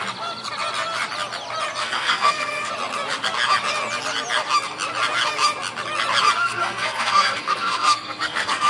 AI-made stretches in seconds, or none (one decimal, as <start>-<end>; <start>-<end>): 1.8-2.7; 6.4-8.7